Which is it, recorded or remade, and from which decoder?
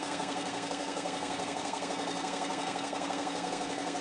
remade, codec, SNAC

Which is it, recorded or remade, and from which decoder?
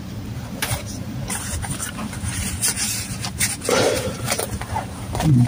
remade, vocoder, BigVGAN v2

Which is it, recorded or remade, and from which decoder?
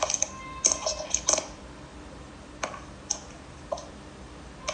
remade, vocoder, BigVGAN v2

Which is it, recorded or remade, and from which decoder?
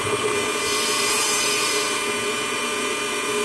remade, vocoder, Vocos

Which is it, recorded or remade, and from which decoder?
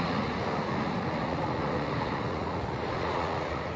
remade, vocoder, Vocos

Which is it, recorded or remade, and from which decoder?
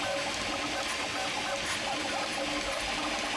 recorded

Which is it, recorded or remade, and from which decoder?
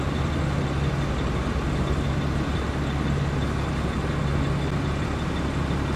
recorded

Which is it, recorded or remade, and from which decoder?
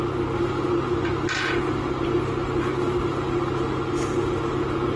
recorded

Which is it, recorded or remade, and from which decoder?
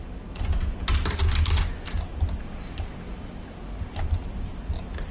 recorded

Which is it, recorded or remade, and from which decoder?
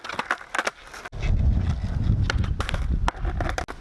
recorded